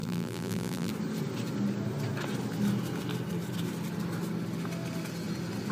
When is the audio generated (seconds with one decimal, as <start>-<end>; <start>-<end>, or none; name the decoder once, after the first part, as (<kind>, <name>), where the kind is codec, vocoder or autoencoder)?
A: 0.0-0.9 (vocoder, BigVGAN v2)